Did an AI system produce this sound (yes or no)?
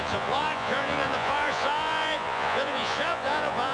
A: yes